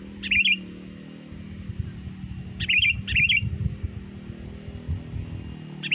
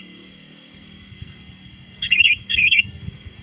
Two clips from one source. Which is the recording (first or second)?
first